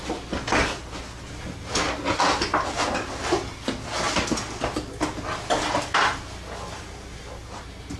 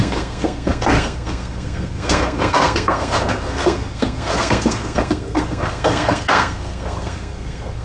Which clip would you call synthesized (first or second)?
second